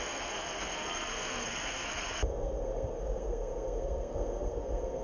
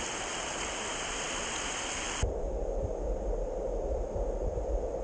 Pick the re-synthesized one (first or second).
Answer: first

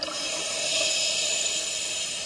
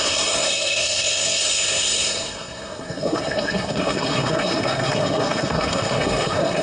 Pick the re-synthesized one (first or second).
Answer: second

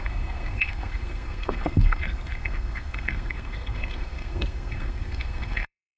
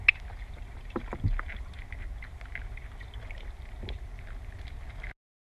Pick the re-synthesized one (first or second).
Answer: first